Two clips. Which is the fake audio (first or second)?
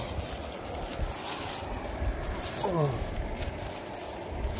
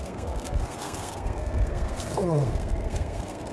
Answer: second